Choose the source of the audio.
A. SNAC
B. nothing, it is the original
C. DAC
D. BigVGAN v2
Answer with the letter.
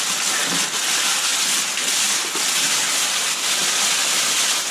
B